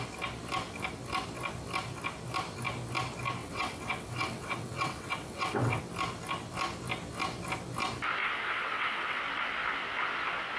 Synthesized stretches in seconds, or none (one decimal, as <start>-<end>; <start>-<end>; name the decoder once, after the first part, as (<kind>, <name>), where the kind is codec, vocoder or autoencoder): 3.4-5.8 (vocoder, WaveNeXt); 8.2-9.2